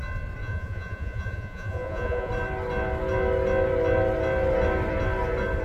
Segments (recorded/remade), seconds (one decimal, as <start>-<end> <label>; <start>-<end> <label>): 0.0-0.4 recorded; 0.4-2.3 remade; 2.3-5.6 recorded